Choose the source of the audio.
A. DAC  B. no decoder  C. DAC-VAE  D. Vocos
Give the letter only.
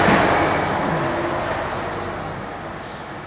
B